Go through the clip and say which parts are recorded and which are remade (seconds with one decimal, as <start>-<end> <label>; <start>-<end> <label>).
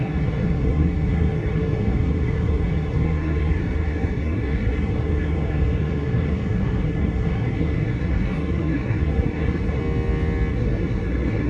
0.0-9.8 remade; 9.8-10.5 recorded; 10.5-11.5 remade